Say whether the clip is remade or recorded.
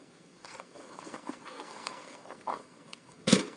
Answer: remade